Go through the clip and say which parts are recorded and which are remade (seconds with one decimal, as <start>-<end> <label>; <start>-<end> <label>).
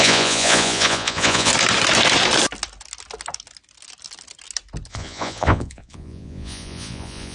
0.0-1.5 remade; 1.5-4.9 recorded; 4.9-7.3 remade